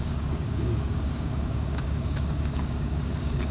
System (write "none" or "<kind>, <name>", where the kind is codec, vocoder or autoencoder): codec, DAC